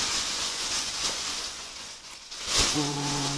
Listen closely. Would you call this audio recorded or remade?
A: remade